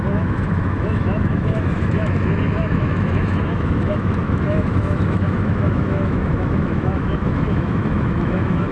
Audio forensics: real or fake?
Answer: fake